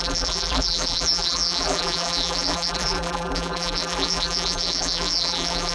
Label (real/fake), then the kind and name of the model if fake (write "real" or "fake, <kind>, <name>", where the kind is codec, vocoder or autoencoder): fake, vocoder, BigVGAN v2